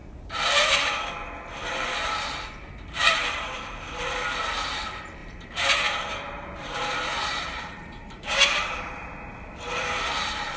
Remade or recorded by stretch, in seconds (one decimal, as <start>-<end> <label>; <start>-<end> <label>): 0.0-1.1 remade; 1.1-3.0 recorded; 3.0-3.7 remade; 3.7-5.2 recorded; 5.2-8.6 remade; 8.6-10.6 recorded